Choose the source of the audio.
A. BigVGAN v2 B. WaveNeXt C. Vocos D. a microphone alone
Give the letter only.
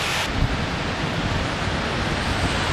D